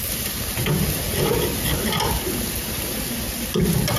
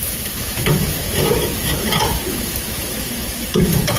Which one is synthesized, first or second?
second